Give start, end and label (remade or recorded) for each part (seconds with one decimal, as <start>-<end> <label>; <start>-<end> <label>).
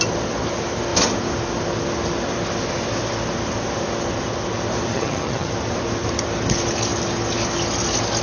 0.0-4.9 recorded; 4.9-5.5 remade; 5.5-8.2 recorded